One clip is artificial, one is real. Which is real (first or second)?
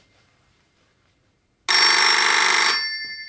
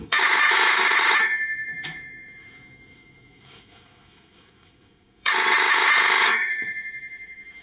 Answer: first